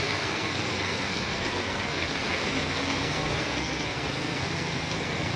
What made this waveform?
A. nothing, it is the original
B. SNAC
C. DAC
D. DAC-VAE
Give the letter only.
B